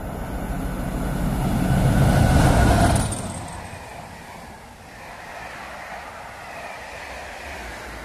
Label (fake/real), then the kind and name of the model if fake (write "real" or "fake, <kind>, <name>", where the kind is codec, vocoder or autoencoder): real